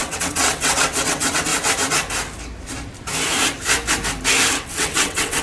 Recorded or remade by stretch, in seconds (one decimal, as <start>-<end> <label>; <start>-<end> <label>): 0.0-1.5 remade; 1.5-4.5 recorded; 4.5-5.4 remade